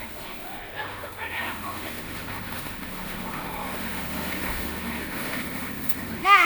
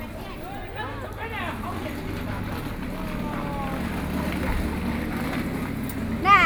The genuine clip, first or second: second